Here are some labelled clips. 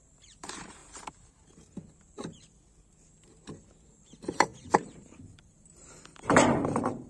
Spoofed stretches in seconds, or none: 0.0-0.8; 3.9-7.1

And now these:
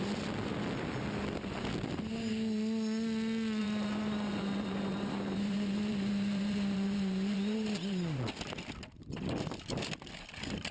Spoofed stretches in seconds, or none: 3.6-8.2

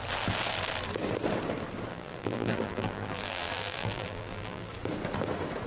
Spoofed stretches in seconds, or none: 1.9-4.7

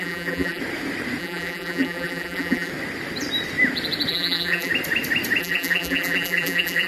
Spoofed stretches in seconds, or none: 0.0-0.6; 1.2-2.7; 4.1-4.7; 5.4-6.9

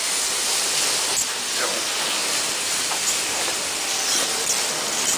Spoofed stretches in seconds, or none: 2.2-3.5

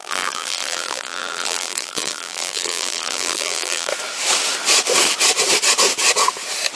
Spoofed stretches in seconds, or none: 0.0-3.9

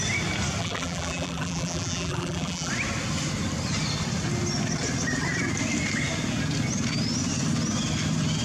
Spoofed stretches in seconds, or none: 0.6-2.7